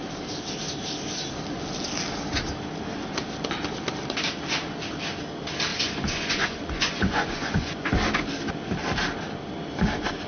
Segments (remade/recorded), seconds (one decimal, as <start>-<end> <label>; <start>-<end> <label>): 0.0-5.7 recorded; 5.7-7.9 remade; 7.9-10.3 recorded